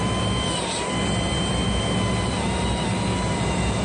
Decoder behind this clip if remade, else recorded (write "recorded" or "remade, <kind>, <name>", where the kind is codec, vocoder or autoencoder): recorded